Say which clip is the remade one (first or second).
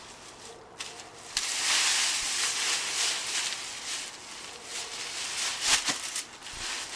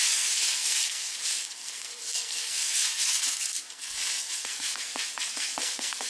second